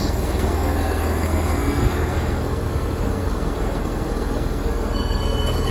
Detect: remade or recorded remade